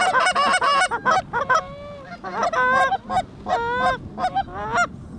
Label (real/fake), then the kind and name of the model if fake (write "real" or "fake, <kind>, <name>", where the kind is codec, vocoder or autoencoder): real